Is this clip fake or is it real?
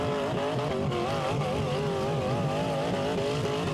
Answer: real